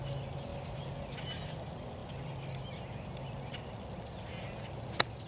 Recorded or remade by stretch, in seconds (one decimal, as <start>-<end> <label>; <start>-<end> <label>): 0.0-5.3 recorded